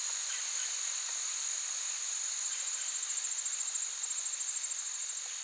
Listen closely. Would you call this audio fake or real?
real